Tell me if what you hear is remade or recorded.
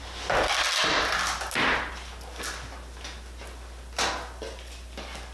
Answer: recorded